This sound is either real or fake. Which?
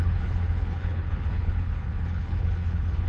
fake